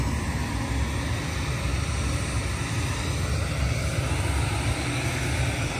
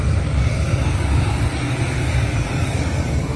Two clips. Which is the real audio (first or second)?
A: first